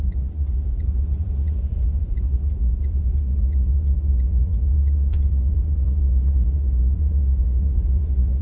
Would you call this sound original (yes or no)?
no